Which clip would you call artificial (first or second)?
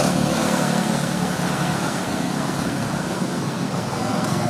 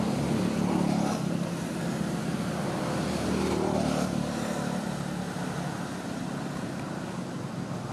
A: first